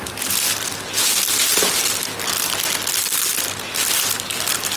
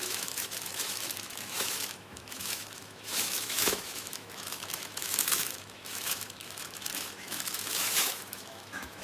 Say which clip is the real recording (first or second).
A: first